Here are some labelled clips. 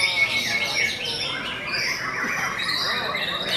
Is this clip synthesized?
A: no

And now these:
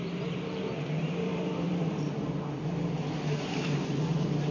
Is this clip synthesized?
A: yes